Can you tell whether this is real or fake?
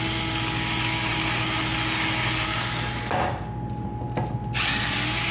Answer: real